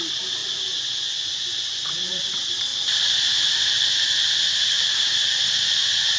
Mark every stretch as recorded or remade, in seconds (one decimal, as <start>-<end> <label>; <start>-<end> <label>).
0.0-0.4 recorded; 0.4-2.3 remade; 2.3-6.2 recorded